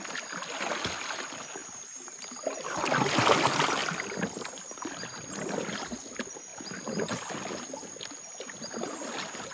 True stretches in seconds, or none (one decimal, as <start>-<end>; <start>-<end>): 0.0-9.5

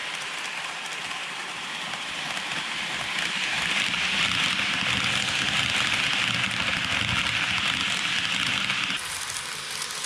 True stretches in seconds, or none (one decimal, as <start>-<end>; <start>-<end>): 3.6-10.1

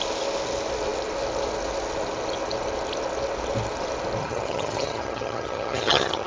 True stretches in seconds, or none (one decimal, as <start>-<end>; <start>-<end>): 0.0-4.2

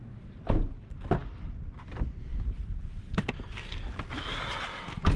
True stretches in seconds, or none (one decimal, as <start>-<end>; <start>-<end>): 0.0-5.2

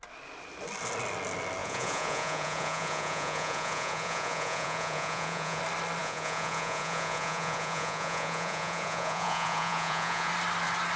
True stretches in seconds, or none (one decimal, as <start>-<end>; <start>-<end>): 0.0-1.6; 5.6-6.0; 10.3-11.0

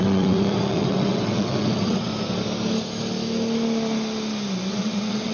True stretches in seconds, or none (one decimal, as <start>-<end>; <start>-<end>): 2.1-4.7